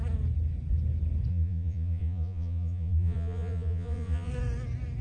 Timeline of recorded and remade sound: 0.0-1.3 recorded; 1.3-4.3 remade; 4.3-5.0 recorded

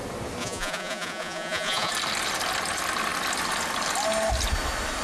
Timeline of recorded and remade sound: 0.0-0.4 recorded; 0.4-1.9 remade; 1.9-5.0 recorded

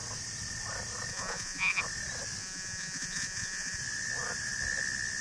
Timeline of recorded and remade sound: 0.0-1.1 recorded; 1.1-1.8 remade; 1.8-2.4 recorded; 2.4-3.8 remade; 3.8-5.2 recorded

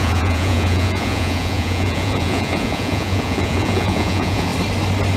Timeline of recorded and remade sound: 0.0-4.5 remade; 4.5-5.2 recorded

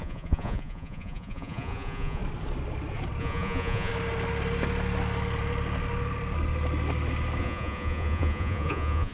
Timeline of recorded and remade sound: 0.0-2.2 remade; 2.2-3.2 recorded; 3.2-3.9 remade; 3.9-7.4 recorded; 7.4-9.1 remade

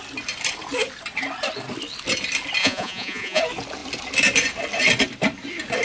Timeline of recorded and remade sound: 0.0-2.6 recorded; 2.6-3.4 remade; 3.4-5.8 recorded

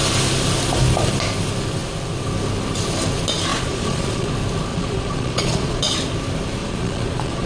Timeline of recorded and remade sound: 0.0-3.5 recorded; 3.5-4.3 remade; 4.3-4.7 recorded; 4.7-5.9 remade; 5.9-6.6 recorded; 6.6-7.5 remade

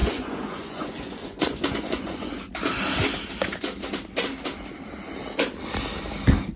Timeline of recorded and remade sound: 0.0-2.3 remade; 2.3-6.6 recorded